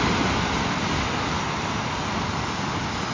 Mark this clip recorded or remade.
recorded